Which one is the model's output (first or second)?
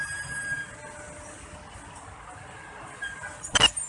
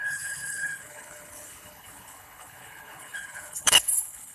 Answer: second